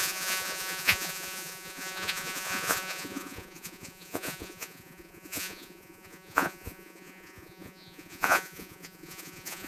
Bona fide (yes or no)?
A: no